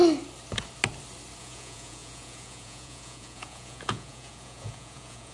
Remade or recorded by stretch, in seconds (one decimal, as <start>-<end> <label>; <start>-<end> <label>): 0.0-1.4 recorded; 1.4-5.3 remade